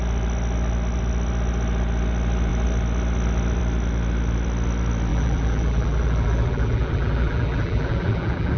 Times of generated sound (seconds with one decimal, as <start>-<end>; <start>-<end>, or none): 5.1-8.6